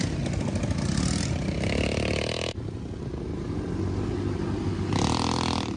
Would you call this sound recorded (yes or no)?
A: yes